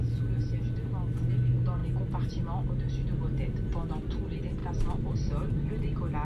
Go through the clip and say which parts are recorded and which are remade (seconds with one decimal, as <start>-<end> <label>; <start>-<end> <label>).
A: 0.0-6.2 recorded